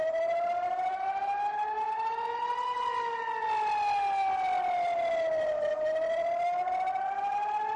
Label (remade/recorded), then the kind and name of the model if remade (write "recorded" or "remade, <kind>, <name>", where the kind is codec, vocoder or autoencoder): recorded